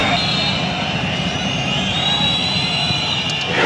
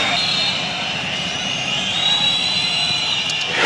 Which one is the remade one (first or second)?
second